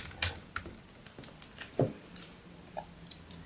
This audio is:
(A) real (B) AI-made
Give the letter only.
A